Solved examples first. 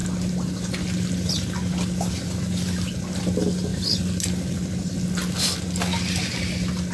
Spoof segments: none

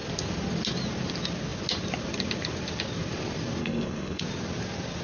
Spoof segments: 3.6-4.2 (codec, SNAC)

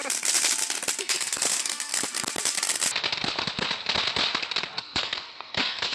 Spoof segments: 1.0-1.9 (codec, SNAC); 4.8-5.9

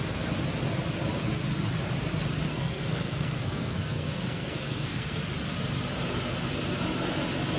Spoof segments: 2.5-5.2 (codec, SNAC)

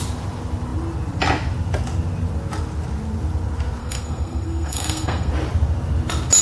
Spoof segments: 3.8-5.3 (codec, SNAC)

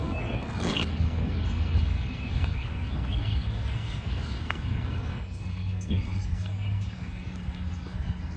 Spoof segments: 0.0-8.4 (codec, SNAC)

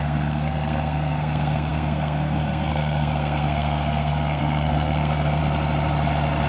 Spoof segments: 0.0-5.4 (codec, SNAC)

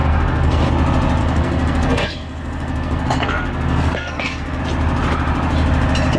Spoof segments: 0.0-0.7 (codec, SNAC); 1.2-4.6